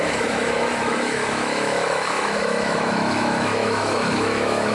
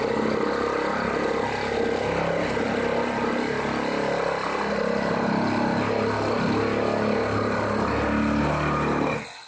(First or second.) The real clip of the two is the second